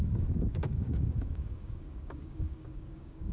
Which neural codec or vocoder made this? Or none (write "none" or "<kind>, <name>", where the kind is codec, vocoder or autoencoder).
codec, DAC